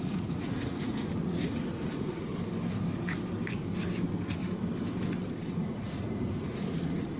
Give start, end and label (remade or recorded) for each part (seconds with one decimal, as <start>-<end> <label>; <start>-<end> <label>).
0.0-2.3 remade; 2.3-5.5 recorded; 5.5-7.2 remade